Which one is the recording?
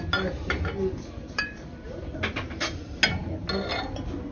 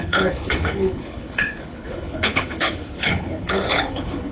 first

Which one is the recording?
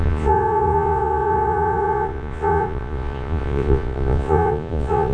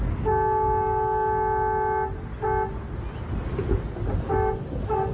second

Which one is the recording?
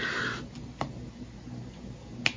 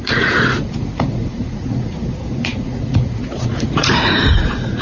first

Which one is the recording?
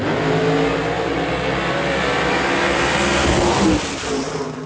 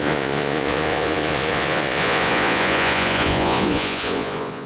first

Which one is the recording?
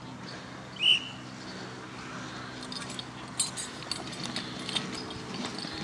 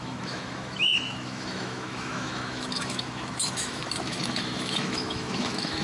first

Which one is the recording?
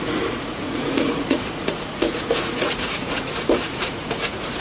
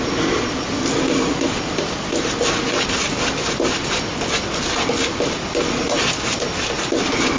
second